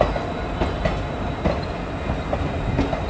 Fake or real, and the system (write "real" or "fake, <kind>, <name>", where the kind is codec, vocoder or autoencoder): real